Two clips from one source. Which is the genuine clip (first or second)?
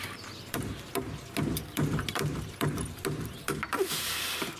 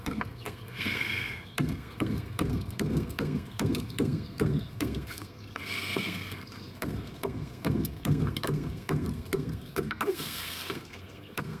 first